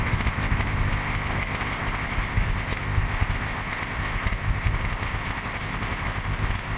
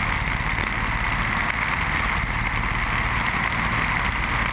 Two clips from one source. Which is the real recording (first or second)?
second